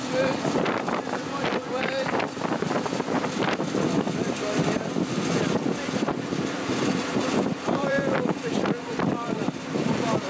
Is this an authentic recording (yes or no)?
no